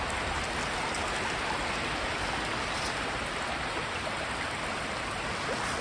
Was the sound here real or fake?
real